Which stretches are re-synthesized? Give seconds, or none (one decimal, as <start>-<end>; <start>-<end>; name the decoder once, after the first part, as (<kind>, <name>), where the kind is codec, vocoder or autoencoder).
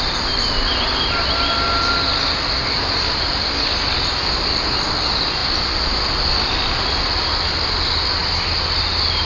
none